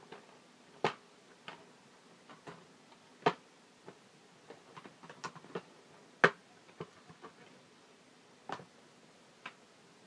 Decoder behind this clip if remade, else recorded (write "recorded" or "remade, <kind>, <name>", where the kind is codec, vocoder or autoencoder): recorded